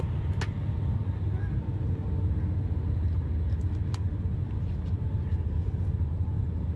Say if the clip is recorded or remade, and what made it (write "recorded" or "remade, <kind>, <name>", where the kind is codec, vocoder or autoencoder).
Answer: recorded